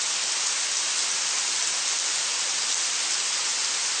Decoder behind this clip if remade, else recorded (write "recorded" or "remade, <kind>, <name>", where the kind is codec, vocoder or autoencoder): recorded